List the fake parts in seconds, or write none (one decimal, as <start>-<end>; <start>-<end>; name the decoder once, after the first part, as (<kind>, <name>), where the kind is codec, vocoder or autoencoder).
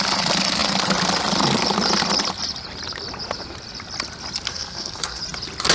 4.5-5.2 (codec, SNAC)